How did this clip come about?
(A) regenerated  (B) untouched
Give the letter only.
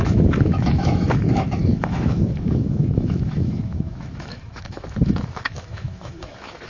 A